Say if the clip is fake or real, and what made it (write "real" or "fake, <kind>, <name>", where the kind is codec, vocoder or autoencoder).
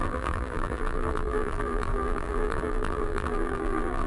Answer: fake, vocoder, BigVGAN v2